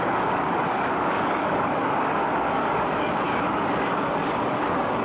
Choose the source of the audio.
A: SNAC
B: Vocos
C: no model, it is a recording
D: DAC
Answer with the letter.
D